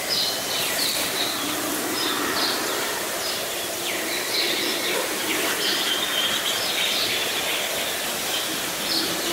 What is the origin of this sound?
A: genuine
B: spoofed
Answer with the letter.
A